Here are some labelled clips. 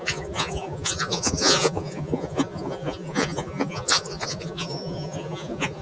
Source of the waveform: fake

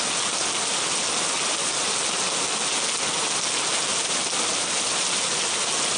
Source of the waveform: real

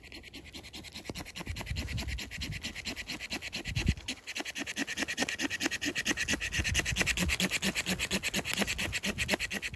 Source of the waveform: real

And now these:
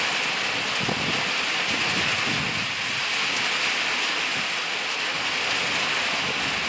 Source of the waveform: real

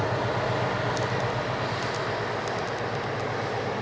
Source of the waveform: real